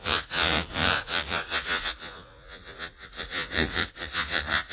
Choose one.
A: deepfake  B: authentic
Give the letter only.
A